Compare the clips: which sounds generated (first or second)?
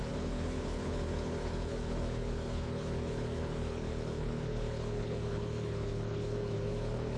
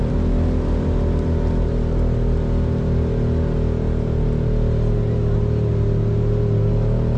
first